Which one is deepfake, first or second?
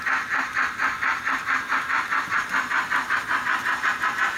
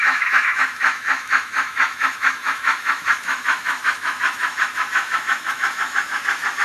second